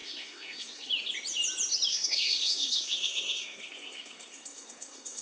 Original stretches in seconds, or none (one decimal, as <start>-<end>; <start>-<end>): 0.9-1.9